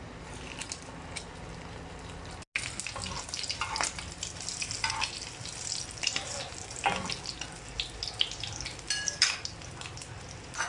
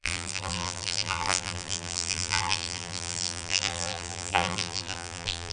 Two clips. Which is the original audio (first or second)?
first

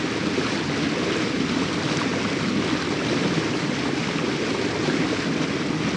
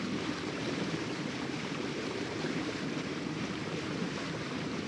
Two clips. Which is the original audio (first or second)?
first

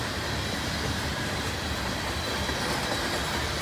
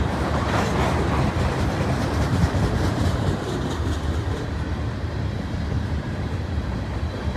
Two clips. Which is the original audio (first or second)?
first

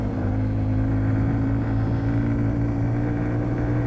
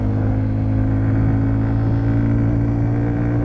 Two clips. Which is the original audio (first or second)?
second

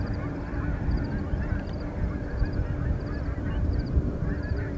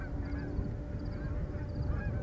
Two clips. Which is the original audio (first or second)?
second